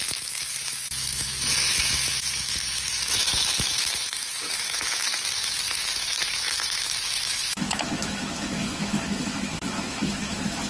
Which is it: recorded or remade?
remade